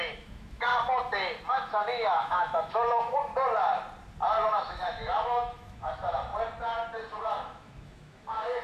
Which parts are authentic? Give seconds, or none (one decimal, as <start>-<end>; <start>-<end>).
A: 0.7-1.5; 3.3-4.5; 6.3-7.2